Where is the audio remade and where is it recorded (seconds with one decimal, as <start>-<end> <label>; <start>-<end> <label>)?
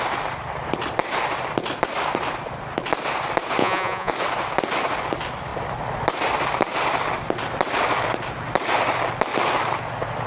0.0-3.6 recorded; 3.6-4.1 remade; 4.1-10.3 recorded